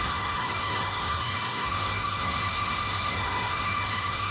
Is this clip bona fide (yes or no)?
no